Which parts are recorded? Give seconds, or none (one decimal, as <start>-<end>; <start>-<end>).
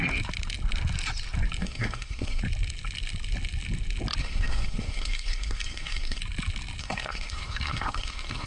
0.0-1.6; 2.4-4.2; 6.2-6.8